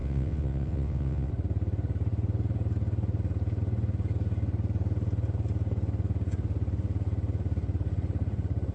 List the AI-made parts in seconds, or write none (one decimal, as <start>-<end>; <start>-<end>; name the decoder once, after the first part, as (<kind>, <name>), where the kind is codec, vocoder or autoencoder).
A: 0.0-1.3 (vocoder, WaveNeXt)